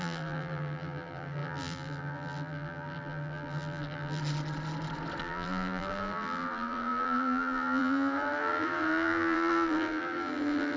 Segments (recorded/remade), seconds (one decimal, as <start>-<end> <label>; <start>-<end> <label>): 0.0-4.2 remade; 4.2-5.2 recorded; 5.2-10.8 remade